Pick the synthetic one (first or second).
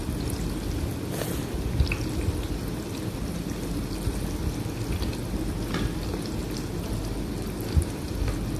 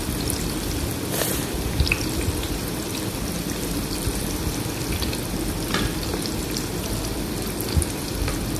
second